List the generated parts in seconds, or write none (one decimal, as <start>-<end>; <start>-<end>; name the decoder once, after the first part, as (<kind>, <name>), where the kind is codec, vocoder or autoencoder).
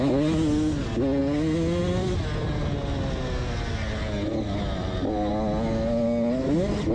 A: none